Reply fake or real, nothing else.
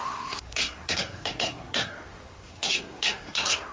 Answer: fake